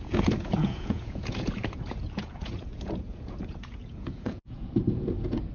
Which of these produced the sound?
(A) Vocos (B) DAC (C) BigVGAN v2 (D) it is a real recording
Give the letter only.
A